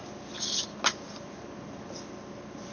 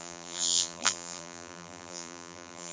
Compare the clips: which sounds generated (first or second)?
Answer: second